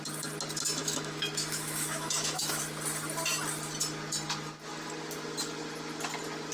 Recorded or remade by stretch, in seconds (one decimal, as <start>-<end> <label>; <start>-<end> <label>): 0.0-0.8 recorded; 0.8-2.6 remade; 2.6-6.5 recorded